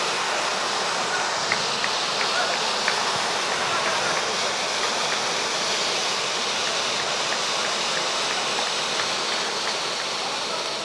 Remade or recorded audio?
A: recorded